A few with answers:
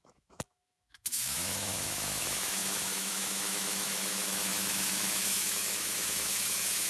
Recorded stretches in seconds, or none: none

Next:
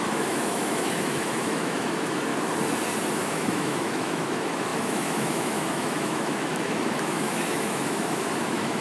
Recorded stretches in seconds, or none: 2.3-3.1

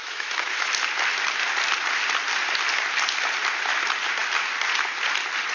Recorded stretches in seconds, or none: 0.7-5.5

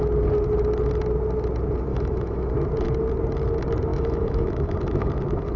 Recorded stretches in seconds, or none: 0.0-1.9; 2.5-3.9; 5.1-5.6

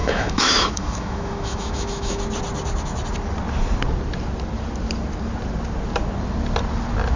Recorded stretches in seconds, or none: 2.2-7.2

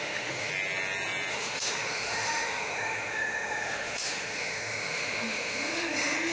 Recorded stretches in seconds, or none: 0.5-1.3

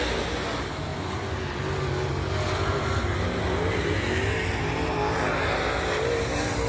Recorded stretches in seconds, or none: 0.0-6.7